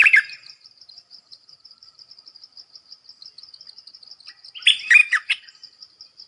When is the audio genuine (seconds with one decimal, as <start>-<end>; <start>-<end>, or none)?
2.0-5.0; 5.5-6.3